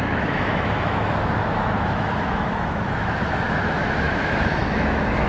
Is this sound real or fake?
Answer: fake